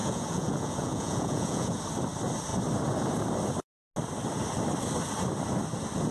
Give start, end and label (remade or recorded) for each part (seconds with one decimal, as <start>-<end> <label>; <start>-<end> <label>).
0.0-1.8 remade; 1.8-6.1 recorded